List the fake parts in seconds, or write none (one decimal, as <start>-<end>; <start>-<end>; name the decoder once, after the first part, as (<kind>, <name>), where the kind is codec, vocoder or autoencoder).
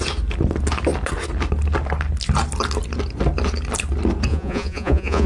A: 4.3-5.3 (vocoder, Vocos)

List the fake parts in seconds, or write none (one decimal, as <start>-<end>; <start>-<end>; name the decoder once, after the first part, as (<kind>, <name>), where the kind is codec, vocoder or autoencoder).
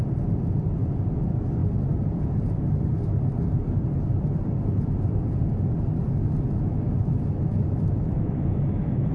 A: 6.7-9.1 (autoencoder, DAC-VAE)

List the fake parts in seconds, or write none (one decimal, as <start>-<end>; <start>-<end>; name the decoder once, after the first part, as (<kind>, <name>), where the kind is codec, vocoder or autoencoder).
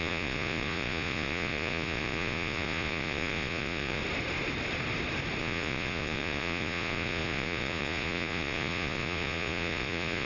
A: 0.0-4.0 (vocoder, Vocos); 5.4-10.3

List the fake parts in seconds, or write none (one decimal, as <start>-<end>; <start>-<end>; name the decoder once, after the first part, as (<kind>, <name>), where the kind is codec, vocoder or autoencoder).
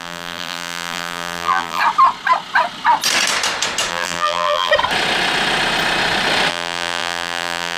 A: 0.0-1.8 (vocoder, BigVGAN v2); 3.9-4.7; 6.5-7.8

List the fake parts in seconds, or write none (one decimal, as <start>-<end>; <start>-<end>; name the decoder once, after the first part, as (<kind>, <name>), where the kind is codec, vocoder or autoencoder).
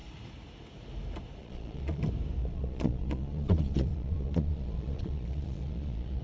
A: 1.4-2.0 (vocoder, Vocos); 2.4-6.2